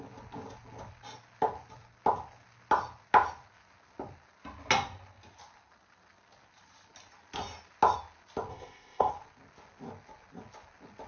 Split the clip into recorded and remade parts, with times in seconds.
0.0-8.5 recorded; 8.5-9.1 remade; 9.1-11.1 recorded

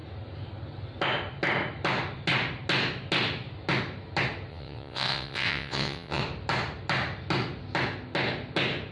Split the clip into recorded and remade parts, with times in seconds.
0.0-4.5 recorded; 4.5-6.2 remade; 6.2-8.9 recorded